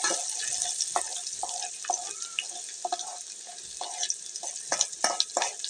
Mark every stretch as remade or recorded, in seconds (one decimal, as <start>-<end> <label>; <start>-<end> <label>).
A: 0.0-5.7 recorded

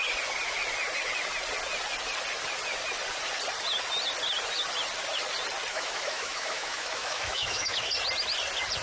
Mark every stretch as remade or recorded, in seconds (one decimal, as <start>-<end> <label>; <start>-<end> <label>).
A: 0.0-5.7 recorded; 5.7-7.9 remade; 7.9-8.8 recorded

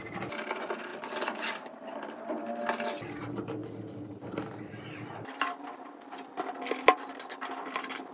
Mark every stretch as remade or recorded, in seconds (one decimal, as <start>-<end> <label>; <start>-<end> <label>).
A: 0.0-8.1 recorded

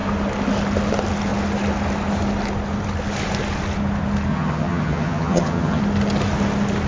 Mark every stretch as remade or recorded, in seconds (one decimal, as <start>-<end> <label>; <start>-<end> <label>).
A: 0.0-4.3 recorded; 4.3-5.8 remade; 5.8-6.9 recorded